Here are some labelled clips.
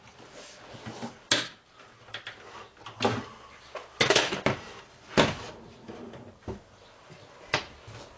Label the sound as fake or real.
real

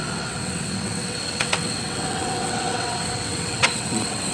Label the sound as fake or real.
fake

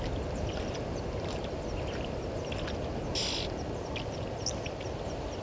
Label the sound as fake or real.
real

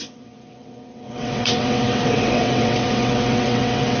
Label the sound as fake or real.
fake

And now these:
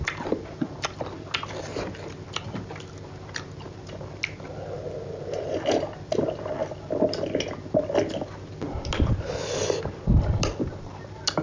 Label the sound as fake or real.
real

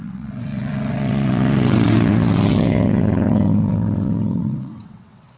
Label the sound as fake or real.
fake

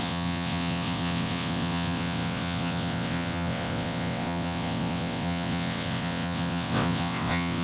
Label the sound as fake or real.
fake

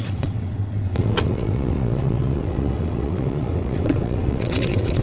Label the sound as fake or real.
fake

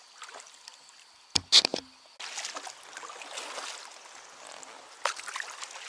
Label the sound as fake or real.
real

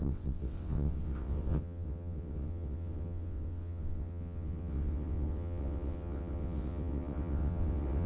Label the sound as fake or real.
fake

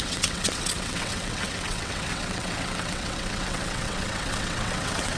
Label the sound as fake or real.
fake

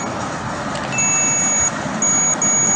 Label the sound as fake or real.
real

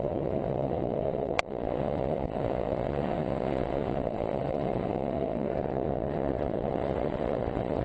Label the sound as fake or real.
fake